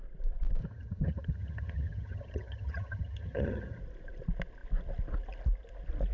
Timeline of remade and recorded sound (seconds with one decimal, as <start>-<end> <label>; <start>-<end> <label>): 0.0-0.6 recorded; 0.6-3.8 remade; 3.8-6.1 recorded